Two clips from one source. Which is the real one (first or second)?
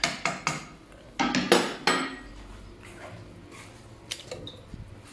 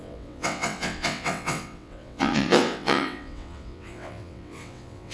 first